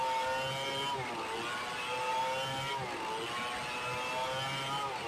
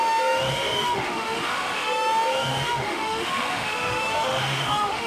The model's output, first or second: second